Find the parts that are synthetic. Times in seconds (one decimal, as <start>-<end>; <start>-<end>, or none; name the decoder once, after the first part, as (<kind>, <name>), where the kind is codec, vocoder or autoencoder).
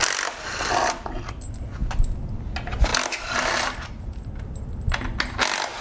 none